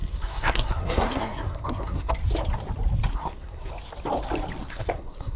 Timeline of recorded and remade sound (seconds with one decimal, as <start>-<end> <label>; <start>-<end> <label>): 0.0-2.1 remade; 2.1-3.1 recorded; 3.1-3.7 remade; 3.7-4.6 recorded; 4.6-5.4 remade